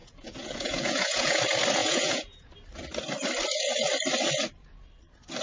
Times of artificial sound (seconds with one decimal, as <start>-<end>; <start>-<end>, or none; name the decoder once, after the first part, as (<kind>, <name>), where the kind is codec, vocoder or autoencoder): 0.0-1.4 (vocoder, Vocos); 1.8-2.5